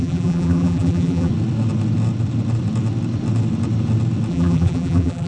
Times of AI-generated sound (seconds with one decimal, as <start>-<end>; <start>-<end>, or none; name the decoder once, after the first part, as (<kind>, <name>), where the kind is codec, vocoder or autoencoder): 0.0-1.3 (vocoder, BigVGAN v2); 4.3-5.3